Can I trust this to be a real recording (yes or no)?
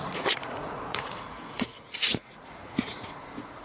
no